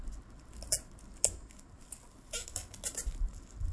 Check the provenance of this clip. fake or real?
real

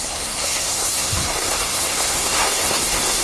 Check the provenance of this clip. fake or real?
fake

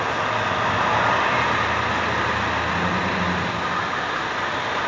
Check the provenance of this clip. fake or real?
real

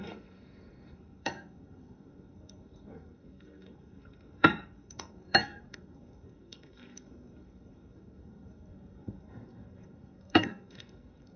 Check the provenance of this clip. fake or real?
fake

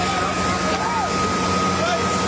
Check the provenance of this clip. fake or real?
real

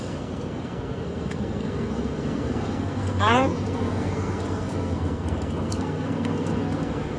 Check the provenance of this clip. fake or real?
fake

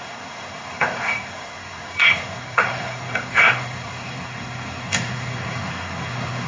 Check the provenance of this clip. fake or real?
fake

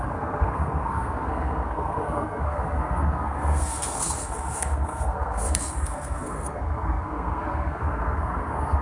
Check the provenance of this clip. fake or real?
fake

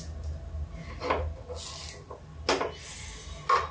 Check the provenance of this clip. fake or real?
real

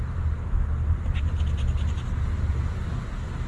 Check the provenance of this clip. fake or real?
real